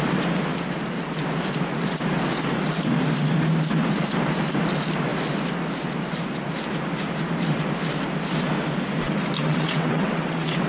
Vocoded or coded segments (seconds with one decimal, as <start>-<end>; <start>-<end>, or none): 9.4-10.7